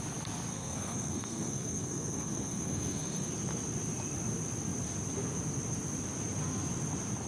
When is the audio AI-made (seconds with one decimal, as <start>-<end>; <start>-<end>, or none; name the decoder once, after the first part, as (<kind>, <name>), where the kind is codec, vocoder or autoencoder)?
0.5-3.3 (codec, SNAC)

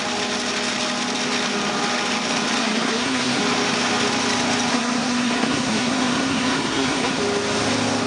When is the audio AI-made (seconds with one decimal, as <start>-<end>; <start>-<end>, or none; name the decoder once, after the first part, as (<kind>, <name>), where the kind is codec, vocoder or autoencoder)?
2.6-3.4 (codec, SNAC); 4.7-7.2

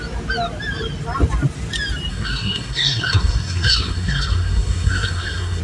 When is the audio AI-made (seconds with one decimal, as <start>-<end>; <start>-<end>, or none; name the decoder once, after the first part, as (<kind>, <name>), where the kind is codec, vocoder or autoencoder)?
2.1-5.6 (codec, SNAC)

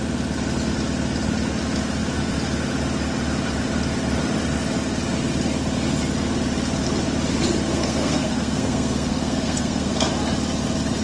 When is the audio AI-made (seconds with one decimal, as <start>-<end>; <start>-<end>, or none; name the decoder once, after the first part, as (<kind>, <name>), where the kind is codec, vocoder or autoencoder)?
7.7-10.1 (codec, SNAC)